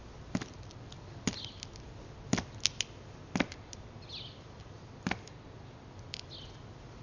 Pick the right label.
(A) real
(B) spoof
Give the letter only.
A